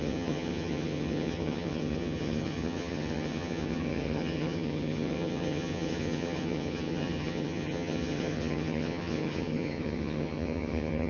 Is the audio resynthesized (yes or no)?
yes